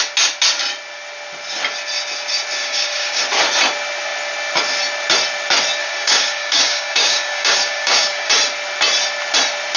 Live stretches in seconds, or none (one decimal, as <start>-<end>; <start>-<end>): 0.0-2.6; 3.2-5.8; 8.3-9.8